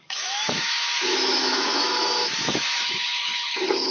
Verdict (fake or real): fake